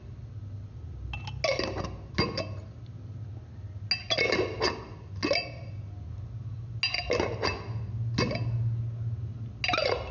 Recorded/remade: recorded